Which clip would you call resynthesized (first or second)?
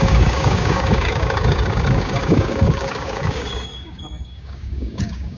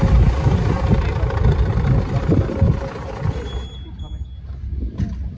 first